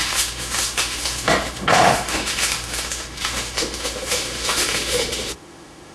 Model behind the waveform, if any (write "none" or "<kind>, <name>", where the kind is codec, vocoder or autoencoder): autoencoder, DAC-VAE